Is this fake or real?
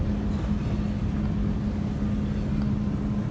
real